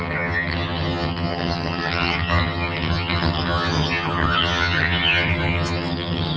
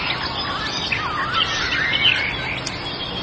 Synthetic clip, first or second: first